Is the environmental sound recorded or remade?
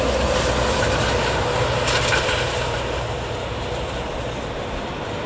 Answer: recorded